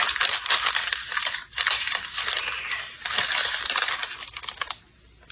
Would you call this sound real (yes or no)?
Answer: yes